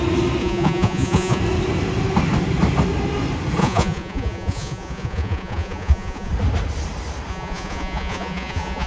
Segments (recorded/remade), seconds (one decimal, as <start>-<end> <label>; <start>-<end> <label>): 0.0-0.4 recorded; 0.4-1.4 remade; 1.4-3.6 recorded; 3.6-6.3 remade; 6.3-7.3 recorded; 7.3-8.9 remade